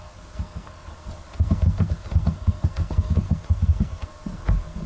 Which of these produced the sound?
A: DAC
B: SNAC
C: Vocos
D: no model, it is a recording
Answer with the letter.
B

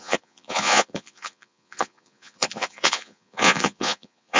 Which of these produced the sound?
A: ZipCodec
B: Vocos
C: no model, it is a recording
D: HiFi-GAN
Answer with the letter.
B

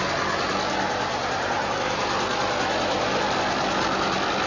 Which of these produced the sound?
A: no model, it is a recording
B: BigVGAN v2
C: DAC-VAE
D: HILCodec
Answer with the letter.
A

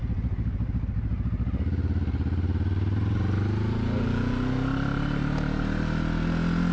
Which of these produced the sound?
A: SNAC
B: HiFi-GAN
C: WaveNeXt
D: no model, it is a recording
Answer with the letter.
D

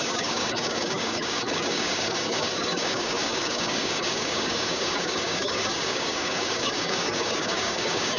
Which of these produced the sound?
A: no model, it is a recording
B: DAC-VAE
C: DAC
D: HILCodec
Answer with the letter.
C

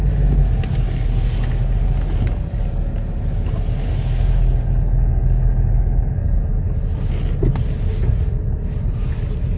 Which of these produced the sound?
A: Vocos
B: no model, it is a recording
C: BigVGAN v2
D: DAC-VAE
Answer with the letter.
B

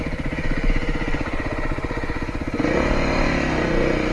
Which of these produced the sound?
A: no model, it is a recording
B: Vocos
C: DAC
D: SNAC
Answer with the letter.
B